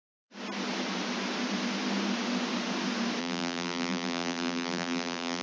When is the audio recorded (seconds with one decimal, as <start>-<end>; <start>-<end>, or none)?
0.0-3.2